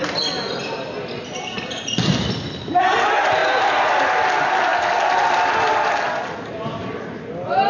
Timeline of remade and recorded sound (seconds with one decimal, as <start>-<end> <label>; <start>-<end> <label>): 0.0-7.7 recorded

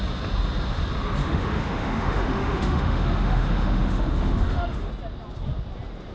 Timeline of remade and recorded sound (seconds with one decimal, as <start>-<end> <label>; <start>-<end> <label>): 0.0-1.2 recorded; 1.2-4.9 remade; 4.9-6.1 recorded

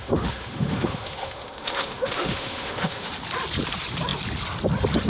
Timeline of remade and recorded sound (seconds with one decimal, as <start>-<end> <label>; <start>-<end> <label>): 0.0-3.1 remade; 3.1-5.1 recorded

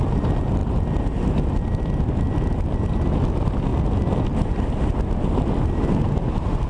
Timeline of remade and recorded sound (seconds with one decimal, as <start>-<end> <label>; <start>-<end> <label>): 0.0-6.7 recorded

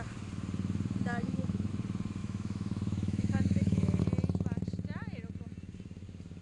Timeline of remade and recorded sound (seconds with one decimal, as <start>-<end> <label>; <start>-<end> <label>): 0.0-1.1 recorded; 1.1-1.7 remade; 1.7-2.2 recorded; 2.2-4.0 remade; 4.0-6.4 recorded

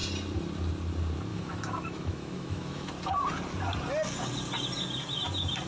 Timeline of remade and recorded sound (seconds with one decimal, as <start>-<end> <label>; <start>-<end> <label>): 0.0-1.3 recorded; 1.3-2.9 remade; 2.9-5.7 recorded

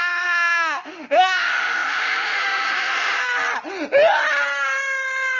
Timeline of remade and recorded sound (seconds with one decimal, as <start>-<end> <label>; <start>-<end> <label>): 0.0-3.2 remade; 3.2-5.4 recorded